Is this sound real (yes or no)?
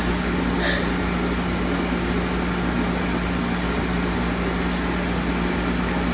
yes